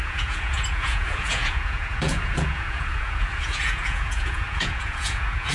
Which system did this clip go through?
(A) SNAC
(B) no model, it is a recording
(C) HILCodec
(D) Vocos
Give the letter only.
D